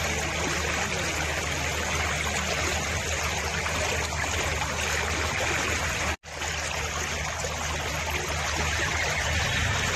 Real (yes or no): yes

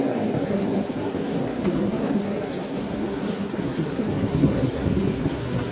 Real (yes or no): no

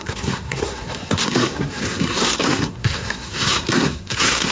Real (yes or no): no